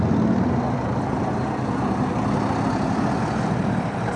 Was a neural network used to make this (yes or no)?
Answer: no